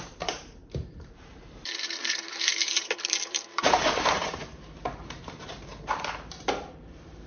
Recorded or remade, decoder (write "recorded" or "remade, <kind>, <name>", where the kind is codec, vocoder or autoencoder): remade, vocoder, BigVGAN v2